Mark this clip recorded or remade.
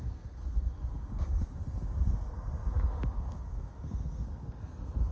remade